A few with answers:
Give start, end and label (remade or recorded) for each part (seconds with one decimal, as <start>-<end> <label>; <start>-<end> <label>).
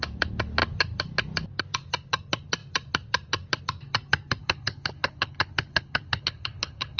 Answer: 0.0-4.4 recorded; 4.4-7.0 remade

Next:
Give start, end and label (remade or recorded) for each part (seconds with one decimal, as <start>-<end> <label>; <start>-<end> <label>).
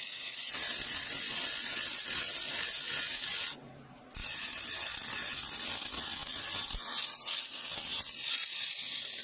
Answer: 0.0-9.2 recorded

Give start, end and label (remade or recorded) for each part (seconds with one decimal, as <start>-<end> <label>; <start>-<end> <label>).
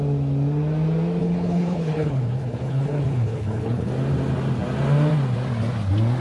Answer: 0.0-1.2 recorded; 1.2-3.9 remade; 3.9-6.2 recorded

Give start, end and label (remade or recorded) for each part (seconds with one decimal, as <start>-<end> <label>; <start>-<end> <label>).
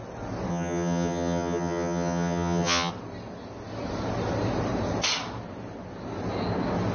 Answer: 0.0-0.5 recorded; 0.5-2.9 remade; 2.9-6.9 recorded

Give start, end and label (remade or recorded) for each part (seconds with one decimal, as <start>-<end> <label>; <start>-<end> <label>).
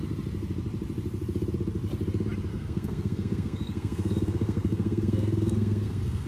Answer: 0.0-2.5 recorded; 2.5-6.3 remade